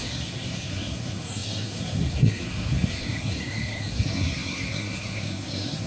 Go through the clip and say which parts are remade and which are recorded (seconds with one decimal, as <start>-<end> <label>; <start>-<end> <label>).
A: 0.0-5.9 remade